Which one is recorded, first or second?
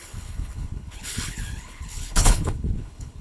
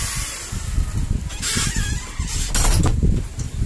second